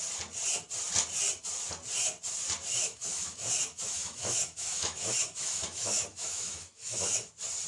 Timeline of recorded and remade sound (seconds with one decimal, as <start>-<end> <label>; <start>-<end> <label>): 0.0-2.7 recorded; 2.7-7.3 remade; 7.3-7.7 recorded